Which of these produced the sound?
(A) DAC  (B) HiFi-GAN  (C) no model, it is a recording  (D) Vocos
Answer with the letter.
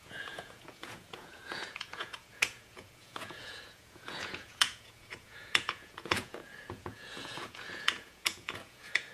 D